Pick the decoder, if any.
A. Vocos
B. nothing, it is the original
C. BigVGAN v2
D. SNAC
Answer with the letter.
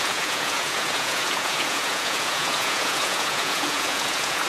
A